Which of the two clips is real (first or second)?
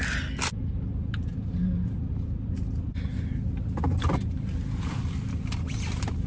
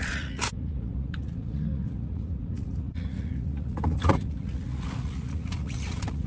first